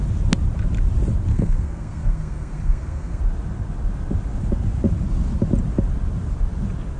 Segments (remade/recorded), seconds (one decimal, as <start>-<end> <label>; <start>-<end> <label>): 0.0-1.3 recorded; 1.3-3.2 remade; 3.2-7.0 recorded